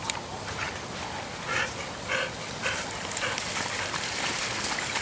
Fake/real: real